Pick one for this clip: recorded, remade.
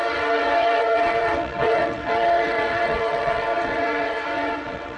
remade